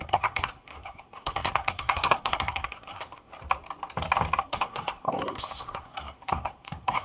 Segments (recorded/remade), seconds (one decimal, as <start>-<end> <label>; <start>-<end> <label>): 0.0-3.3 remade; 3.3-4.4 recorded; 4.4-7.0 remade